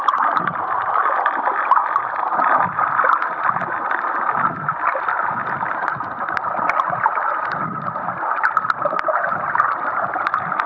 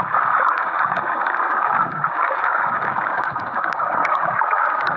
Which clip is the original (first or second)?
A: first